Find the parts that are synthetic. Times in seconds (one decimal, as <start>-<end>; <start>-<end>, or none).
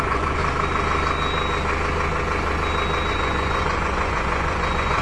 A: 0.0-0.4; 3.1-5.0